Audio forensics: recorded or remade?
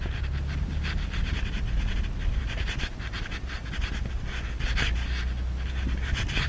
recorded